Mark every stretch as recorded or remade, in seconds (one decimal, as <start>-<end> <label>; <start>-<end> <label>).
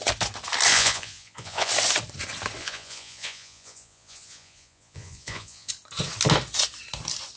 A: 0.0-0.7 recorded; 0.7-1.7 remade; 1.7-2.6 recorded; 2.6-5.7 remade; 5.7-7.4 recorded